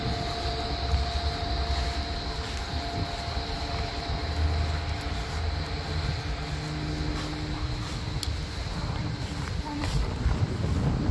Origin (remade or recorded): recorded